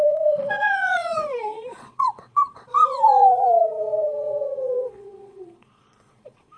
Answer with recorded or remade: remade